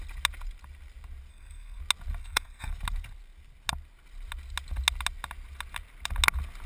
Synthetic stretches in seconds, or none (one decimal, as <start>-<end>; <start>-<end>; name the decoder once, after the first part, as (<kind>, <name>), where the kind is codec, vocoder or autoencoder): 1.3-1.8 (codec, SNAC); 2.2-2.7

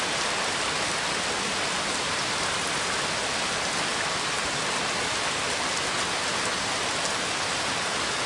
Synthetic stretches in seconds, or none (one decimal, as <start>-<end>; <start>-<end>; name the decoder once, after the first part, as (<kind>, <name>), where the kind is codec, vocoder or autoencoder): none

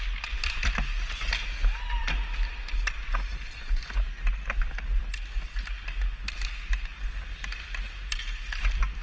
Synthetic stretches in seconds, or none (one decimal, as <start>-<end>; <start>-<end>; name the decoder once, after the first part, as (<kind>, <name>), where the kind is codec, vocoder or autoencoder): none

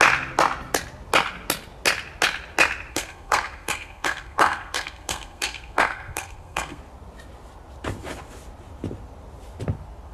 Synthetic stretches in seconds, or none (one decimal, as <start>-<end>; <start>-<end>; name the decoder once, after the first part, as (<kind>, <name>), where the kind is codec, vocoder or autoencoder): 2.9-6.8 (codec, SNAC)

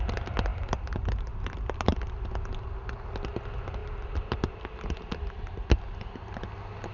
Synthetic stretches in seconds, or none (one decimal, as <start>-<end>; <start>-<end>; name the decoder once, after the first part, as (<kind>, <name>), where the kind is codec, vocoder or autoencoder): none

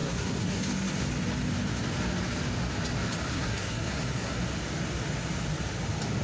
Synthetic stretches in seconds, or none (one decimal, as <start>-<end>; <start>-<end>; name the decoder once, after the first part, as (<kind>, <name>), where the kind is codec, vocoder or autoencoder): 0.0-0.6 (codec, SNAC); 3.3-4.4